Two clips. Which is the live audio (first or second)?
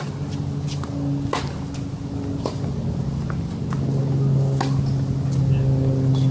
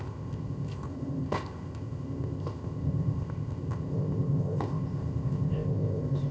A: first